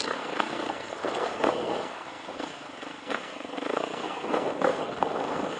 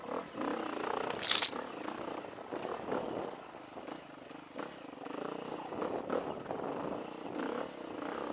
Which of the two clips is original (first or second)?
second